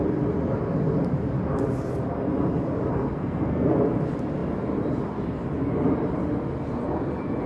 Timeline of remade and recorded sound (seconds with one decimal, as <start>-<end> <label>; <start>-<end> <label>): 0.0-2.9 recorded; 2.9-3.7 remade; 3.7-7.5 recorded